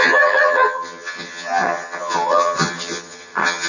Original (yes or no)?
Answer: no